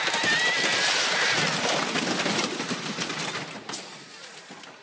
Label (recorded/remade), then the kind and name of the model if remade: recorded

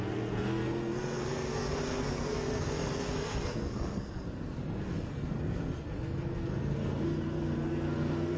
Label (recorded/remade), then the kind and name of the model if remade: remade, codec, SNAC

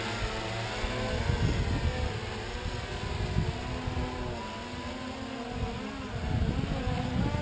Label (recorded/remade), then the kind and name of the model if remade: recorded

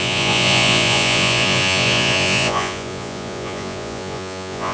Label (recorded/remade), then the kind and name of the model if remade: remade, vocoder, Vocos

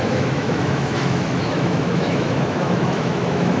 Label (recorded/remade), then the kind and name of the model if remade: remade, autoencoder, DAC-VAE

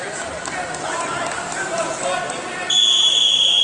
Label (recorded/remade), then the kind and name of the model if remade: recorded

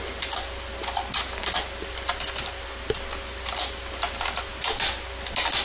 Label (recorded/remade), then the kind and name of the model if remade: recorded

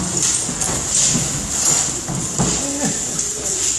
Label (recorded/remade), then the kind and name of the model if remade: recorded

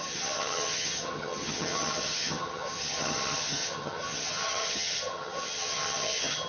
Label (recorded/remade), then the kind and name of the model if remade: remade, vocoder, HiFi-GAN